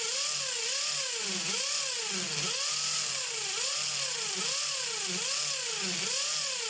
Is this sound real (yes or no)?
yes